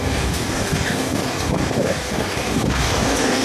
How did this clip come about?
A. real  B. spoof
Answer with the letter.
B